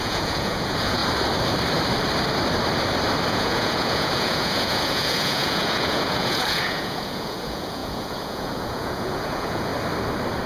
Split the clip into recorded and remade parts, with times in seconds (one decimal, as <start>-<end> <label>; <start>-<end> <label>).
0.0-1.0 remade; 1.0-3.3 recorded; 3.3-9.7 remade; 9.7-10.5 recorded

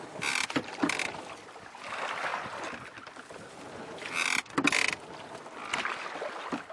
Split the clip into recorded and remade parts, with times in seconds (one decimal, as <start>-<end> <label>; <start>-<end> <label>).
0.0-6.7 recorded

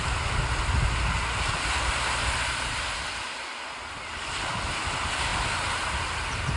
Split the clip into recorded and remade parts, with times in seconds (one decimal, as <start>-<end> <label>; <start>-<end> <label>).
0.0-6.6 recorded